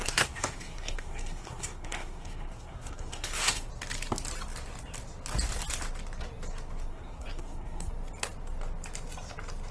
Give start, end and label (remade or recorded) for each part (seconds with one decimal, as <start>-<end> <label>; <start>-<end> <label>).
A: 0.0-3.7 remade; 3.7-6.9 recorded; 6.9-7.9 remade; 7.9-9.7 recorded